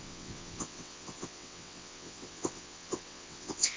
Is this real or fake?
fake